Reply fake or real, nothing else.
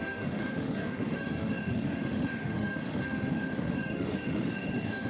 fake